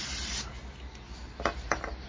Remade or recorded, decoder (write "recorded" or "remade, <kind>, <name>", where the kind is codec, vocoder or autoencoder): recorded